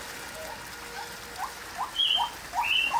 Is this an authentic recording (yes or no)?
yes